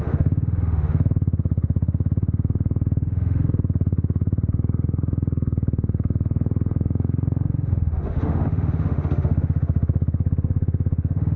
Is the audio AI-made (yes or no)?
yes